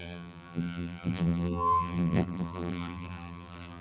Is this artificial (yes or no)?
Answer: yes